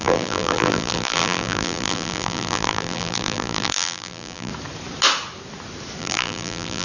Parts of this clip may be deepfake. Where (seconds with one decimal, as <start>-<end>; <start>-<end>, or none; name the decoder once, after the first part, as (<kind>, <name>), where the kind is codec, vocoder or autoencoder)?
0.0-4.5 (vocoder, BigVGAN v2); 6.0-6.8